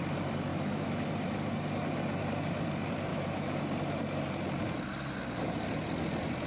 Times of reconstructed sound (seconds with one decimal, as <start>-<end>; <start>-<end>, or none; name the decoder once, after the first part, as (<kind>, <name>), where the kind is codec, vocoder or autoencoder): 0.5-1.1 (autoencoder, DAC-VAE); 3.1-3.6